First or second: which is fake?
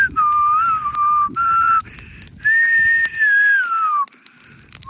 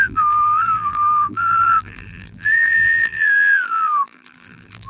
second